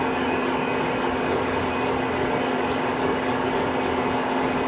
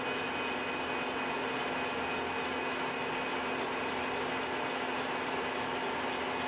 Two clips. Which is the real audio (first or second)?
second